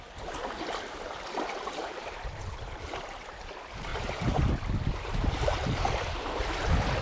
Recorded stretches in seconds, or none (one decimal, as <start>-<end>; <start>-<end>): 0.0-1.8; 2.6-3.9; 4.5-4.9; 6.4-7.0